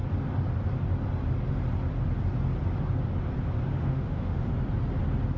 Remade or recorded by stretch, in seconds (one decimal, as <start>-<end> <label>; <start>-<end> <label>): 0.0-3.7 recorded; 3.7-4.5 remade; 4.5-5.4 recorded